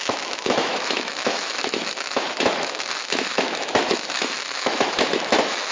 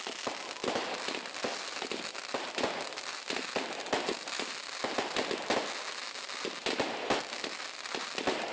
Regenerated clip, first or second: first